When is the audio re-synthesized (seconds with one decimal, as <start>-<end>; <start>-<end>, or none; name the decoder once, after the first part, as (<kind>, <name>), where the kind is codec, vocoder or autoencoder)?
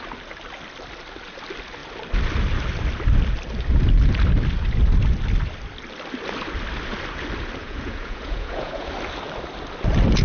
7.6-8.9 (vocoder, Vocos)